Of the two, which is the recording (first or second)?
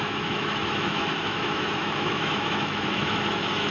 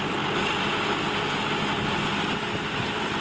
second